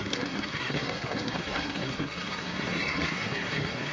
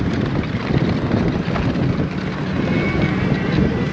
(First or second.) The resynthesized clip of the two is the first